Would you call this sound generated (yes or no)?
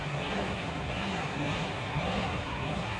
yes